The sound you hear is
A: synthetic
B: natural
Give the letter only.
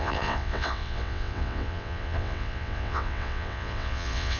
A